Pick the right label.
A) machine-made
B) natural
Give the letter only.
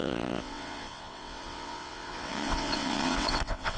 A